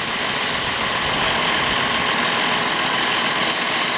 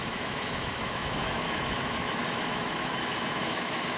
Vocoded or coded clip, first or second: second